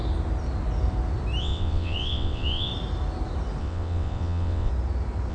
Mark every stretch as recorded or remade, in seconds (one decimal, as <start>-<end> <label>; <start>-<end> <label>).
0.0-1.4 recorded; 1.4-2.7 remade; 2.7-3.6 recorded; 3.6-4.7 remade; 4.7-5.3 recorded